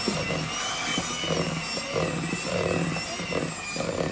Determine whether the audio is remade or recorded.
recorded